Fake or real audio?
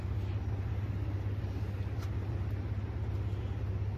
real